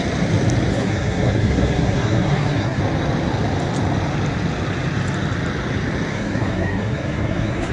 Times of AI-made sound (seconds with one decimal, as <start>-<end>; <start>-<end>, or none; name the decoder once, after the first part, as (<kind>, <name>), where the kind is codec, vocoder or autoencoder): 0.7-2.8 (codec, SNAC); 6.1-7.7